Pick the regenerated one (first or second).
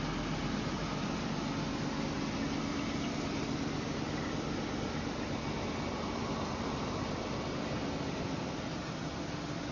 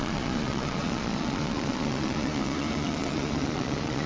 second